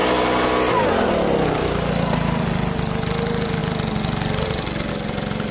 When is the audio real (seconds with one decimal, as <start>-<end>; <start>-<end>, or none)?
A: 0.0-5.5